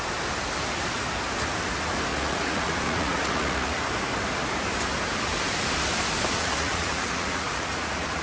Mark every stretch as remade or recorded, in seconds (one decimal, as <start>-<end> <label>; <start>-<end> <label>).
0.0-2.1 recorded; 2.1-3.8 remade; 3.8-6.3 recorded; 6.3-8.2 remade